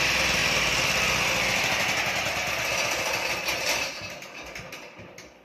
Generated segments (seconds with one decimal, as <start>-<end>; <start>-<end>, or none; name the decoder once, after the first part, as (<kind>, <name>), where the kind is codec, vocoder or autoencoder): none